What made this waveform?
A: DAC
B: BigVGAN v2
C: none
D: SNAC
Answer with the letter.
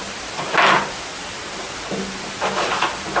C